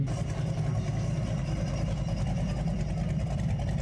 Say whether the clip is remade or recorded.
recorded